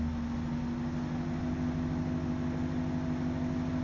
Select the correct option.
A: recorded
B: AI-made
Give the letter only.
A